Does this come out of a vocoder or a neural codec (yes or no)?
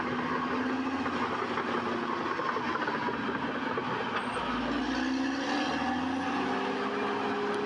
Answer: no